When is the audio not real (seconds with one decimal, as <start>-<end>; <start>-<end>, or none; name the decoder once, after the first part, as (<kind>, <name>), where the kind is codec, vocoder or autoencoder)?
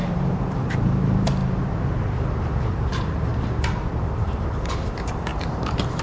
0.0-1.4 (vocoder, BigVGAN v2); 2.6-3.3; 4.2-6.0